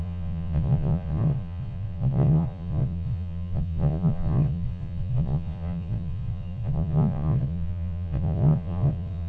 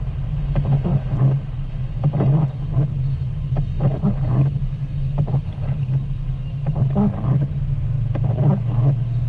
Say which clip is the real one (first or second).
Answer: second